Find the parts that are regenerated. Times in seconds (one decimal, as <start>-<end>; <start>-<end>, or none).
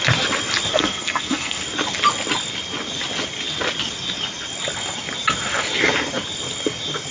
0.7-1.6